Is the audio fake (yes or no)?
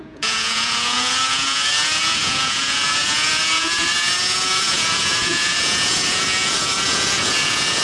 yes